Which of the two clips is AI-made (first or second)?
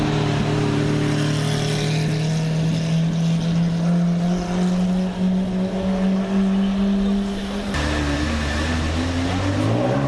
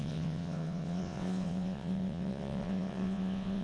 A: second